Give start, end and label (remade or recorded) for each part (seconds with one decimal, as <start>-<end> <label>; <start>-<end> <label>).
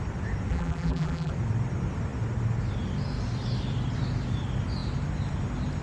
0.0-0.5 recorded; 0.5-1.3 remade; 1.3-5.8 recorded